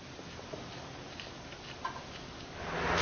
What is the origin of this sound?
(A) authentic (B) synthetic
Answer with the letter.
A